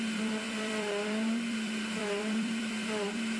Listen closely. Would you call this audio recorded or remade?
remade